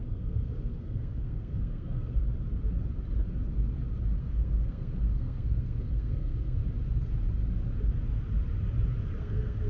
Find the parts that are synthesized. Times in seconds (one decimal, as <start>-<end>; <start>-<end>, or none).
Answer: 0.0-2.2; 4.2-6.6; 9.2-9.7